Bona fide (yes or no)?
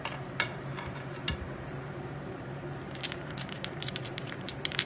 no